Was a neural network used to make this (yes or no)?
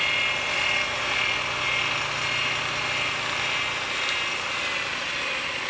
no